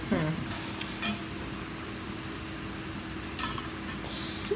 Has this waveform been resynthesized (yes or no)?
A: no